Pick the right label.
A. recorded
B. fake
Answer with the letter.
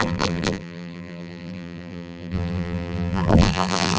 B